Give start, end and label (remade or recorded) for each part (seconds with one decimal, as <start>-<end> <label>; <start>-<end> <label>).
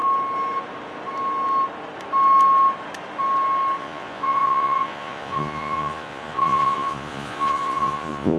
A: 0.0-3.8 recorded; 3.8-8.4 remade